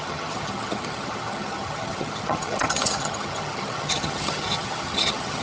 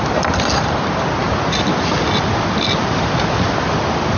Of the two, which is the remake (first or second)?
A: first